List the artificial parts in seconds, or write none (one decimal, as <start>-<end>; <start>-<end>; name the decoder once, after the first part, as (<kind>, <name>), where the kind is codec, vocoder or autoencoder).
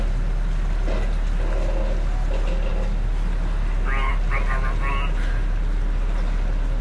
none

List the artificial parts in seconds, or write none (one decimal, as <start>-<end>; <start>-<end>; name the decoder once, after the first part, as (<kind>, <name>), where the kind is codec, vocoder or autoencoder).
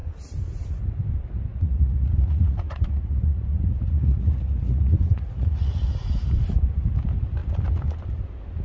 1.5-5.9 (vocoder, Vocos)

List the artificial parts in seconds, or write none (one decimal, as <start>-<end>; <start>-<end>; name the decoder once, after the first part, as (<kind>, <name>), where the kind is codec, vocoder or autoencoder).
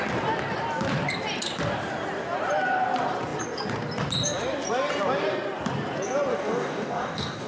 6.3-7.5 (codec, DAC)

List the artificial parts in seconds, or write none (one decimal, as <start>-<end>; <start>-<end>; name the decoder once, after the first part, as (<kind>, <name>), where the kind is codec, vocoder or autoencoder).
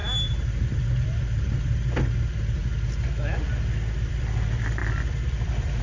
0.0-2.6 (vocoder, BigVGAN v2); 4.1-5.8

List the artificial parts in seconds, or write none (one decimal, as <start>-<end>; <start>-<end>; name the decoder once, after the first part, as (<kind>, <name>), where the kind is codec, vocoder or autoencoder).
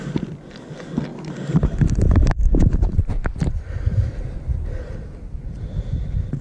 1.1-4.9 (vocoder, BigVGAN v2)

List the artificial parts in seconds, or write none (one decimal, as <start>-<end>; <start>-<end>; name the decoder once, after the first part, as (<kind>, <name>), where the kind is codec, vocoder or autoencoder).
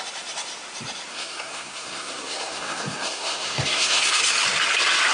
1.1-4.2 (codec, SNAC)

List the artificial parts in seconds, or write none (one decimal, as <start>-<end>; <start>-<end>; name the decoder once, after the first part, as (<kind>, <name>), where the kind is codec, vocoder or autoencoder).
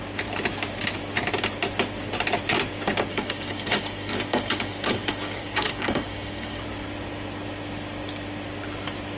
3.1-6.6 (codec, DAC)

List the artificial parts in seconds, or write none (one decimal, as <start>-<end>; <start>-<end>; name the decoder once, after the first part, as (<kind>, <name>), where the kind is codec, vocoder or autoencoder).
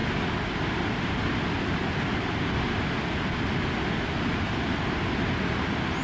none